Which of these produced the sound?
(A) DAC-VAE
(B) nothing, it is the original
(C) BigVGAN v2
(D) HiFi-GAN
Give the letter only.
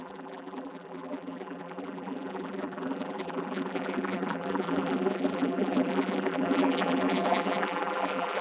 C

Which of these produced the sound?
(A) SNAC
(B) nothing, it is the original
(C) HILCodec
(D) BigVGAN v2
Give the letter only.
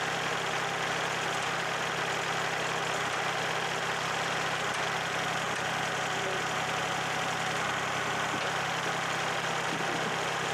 B